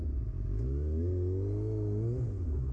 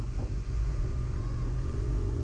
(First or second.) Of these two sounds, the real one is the first